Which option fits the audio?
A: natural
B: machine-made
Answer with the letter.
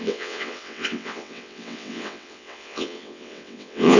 B